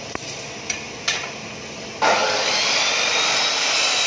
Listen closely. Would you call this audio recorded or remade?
remade